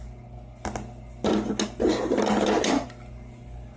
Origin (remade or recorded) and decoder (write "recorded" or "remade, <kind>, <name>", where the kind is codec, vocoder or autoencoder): recorded